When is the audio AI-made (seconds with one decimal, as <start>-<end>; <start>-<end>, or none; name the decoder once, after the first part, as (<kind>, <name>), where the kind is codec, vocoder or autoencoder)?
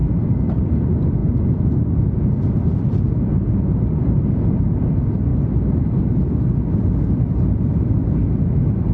0.0-0.6 (vocoder, BigVGAN v2); 5.3-6.0